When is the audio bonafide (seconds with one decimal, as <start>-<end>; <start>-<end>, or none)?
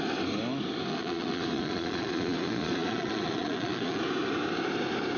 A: 0.0-0.9; 4.0-5.2